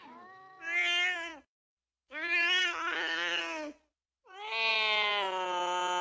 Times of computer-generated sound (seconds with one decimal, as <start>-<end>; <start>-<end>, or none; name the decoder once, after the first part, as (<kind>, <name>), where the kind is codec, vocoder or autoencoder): 2.6-3.4 (codec, SNAC)